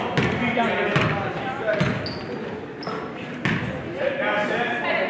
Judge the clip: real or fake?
real